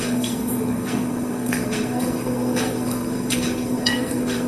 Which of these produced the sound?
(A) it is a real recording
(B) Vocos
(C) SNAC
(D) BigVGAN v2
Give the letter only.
C